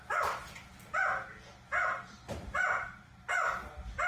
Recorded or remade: recorded